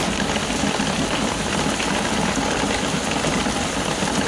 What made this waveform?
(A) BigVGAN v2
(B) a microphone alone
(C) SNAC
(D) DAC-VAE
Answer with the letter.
B